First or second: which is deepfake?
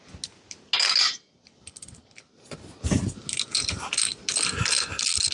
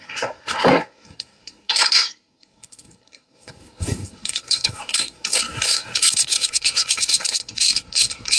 second